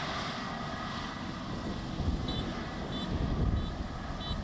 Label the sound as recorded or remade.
recorded